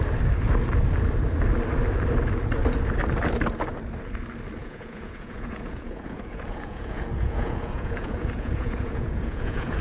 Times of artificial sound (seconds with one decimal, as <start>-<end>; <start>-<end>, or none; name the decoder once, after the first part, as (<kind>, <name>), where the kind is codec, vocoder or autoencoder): 4.6-9.8 (vocoder, Vocos)